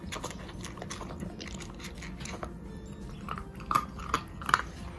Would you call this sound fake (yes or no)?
no